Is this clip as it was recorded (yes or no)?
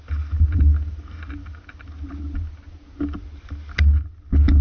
yes